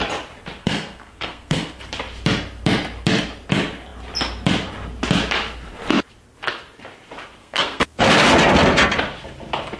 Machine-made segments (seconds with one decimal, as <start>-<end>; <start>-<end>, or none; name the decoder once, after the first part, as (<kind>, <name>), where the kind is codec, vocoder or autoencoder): 0.6-1.8 (codec, SNAC); 7.4-8.0